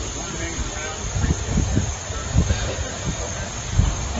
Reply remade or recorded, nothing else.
recorded